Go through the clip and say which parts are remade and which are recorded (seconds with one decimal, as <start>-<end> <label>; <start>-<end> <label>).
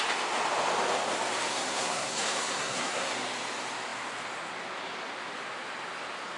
0.0-1.5 recorded; 1.5-3.1 remade; 3.1-6.4 recorded